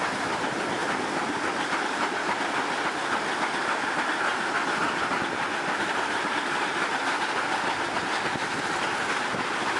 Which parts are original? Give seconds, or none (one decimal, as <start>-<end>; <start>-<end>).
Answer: 0.0-9.8